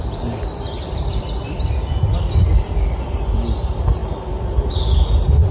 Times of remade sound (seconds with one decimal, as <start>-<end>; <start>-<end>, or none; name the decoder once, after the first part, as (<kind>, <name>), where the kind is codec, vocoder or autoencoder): none